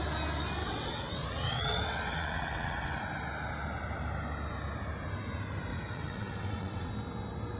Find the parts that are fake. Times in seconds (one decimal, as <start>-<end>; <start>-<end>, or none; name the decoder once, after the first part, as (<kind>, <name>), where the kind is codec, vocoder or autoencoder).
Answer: 0.6-3.0 (vocoder, WaveNeXt); 5.7-6.9